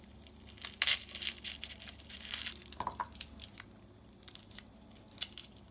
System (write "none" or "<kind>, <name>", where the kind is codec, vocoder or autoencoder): none